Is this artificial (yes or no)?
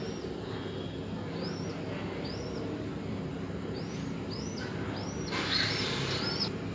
no